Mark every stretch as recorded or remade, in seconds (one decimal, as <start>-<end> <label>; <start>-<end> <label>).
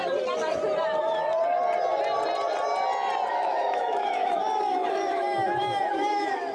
0.0-3.3 recorded; 3.3-6.5 remade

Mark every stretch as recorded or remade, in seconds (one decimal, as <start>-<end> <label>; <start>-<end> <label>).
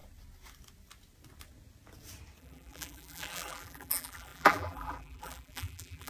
0.0-2.4 recorded; 2.4-6.1 remade